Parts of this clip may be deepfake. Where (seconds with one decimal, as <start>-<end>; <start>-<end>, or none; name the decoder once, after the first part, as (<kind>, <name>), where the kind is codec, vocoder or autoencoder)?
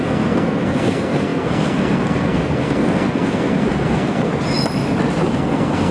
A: 0.0-4.3 (codec, SNAC); 5.3-5.9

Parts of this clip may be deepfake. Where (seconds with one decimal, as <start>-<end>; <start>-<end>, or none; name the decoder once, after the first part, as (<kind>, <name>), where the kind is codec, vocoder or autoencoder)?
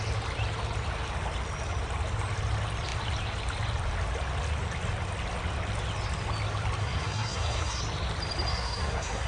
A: 6.8-7.8 (codec, SNAC); 8.5-9.3